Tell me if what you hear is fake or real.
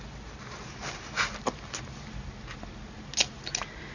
real